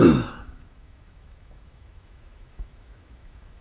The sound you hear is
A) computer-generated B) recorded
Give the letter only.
A